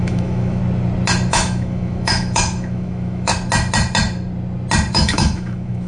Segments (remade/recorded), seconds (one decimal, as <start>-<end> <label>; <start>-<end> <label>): 0.0-0.6 remade; 0.6-1.3 recorded; 1.3-3.3 remade; 3.3-4.9 recorded; 4.9-5.9 remade